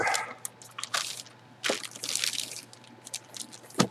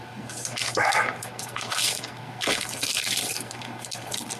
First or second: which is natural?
first